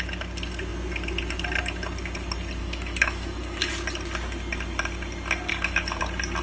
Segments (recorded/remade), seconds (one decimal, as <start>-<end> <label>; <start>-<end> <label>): 0.0-2.6 recorded; 2.6-3.7 remade; 3.7-5.5 recorded; 5.5-6.0 remade; 6.0-6.4 recorded